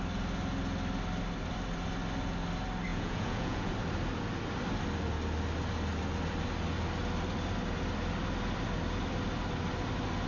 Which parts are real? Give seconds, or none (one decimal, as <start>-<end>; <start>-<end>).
0.0-2.9; 3.7-10.3